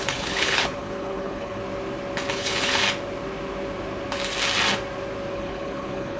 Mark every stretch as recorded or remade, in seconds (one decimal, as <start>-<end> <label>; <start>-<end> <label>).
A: 0.0-1.6 remade; 1.6-2.3 recorded; 2.3-2.8 remade; 2.8-5.3 recorded; 5.3-6.2 remade